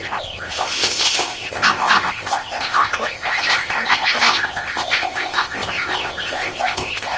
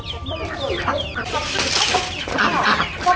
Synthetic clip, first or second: first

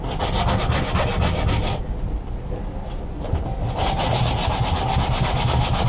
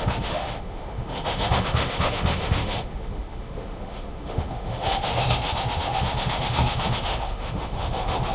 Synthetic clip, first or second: second